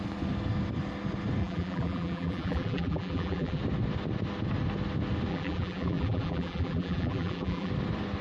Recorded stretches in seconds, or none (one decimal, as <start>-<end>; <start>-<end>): 0.0-1.4; 3.6-5.3; 7.7-8.2